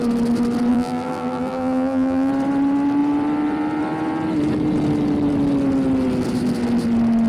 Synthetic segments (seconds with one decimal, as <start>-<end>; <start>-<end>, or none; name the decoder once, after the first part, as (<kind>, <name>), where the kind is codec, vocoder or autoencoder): 0.7-2.3 (vocoder, BigVGAN v2)

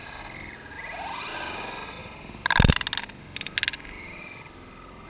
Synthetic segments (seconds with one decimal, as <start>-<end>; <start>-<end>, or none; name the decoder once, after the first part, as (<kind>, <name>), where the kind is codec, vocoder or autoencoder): none

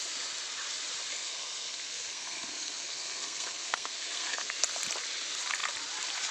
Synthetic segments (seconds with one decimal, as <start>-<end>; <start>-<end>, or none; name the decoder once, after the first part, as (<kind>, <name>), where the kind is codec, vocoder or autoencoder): 1.1-4.5 (codec, SNAC)

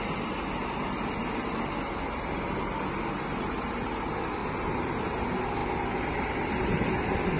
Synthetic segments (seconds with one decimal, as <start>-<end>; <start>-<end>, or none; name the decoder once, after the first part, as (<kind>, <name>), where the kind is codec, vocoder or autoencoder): none

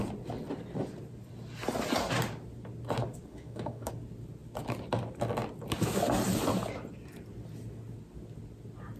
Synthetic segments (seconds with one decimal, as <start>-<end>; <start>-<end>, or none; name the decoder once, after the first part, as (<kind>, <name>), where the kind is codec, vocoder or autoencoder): 3.3-3.9 (autoencoder, DAC-VAE)